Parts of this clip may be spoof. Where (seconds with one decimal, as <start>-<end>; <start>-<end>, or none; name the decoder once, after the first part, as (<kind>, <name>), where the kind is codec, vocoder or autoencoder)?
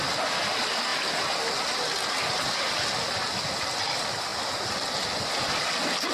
none